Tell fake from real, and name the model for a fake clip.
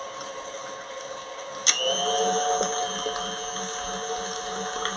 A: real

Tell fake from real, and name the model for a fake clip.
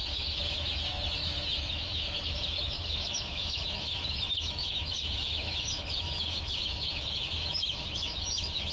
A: fake, autoencoder, DAC-VAE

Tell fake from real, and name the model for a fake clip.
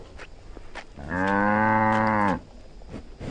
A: real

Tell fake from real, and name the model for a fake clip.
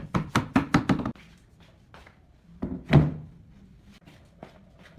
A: real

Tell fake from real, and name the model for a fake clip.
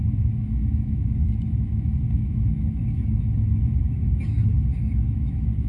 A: fake, autoencoder, DAC-VAE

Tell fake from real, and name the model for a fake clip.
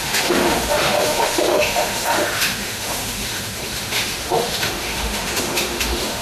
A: fake, autoencoder, DAC-VAE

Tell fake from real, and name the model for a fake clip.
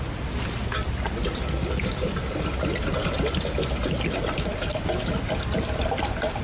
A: real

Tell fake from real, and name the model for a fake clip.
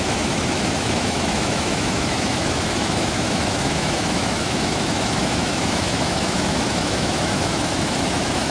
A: fake, autoencoder, DAC-VAE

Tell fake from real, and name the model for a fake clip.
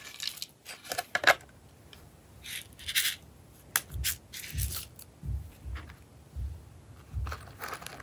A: real